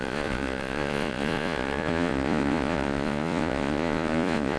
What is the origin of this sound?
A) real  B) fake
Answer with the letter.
B